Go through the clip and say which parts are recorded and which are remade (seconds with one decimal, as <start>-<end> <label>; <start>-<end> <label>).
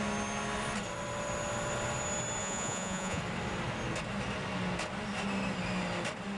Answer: 0.0-2.4 recorded; 2.4-3.2 remade; 3.2-6.4 recorded